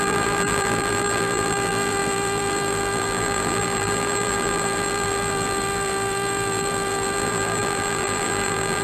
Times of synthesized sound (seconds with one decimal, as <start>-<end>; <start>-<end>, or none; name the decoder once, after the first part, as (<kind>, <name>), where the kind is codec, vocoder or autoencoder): 0.0-8.8 (vocoder, BigVGAN v2)